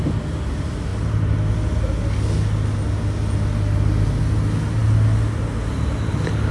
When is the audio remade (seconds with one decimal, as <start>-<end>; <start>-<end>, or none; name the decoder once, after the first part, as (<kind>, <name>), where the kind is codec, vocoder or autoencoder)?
none